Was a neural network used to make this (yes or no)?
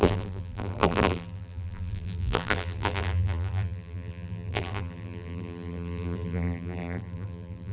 yes